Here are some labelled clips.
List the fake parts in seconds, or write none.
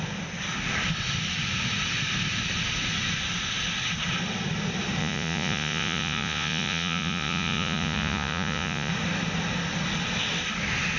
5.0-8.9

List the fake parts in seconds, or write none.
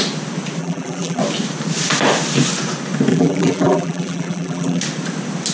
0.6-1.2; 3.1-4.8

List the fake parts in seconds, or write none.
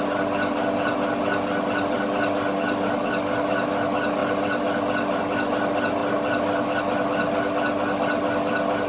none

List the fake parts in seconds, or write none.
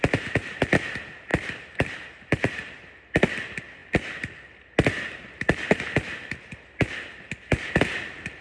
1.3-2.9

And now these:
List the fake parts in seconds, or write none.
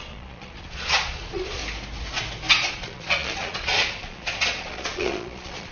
0.0-1.6; 2.7-5.7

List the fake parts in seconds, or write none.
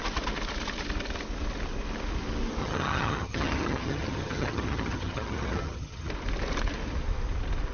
2.6-6.1